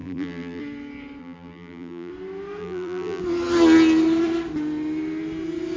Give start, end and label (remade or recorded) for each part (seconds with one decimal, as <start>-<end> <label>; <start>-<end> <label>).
0.0-0.6 remade; 0.6-1.2 recorded; 1.2-2.1 remade; 2.1-2.6 recorded; 2.6-3.2 remade; 3.2-5.8 recorded